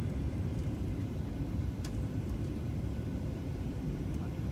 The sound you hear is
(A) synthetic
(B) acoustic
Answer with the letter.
A